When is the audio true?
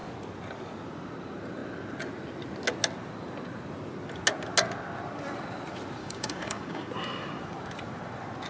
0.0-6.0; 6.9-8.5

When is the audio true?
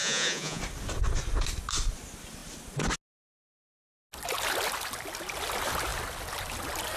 0.6-7.0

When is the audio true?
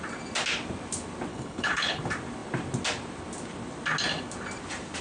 0.0-1.3; 2.0-5.0